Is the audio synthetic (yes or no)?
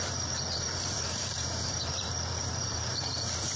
yes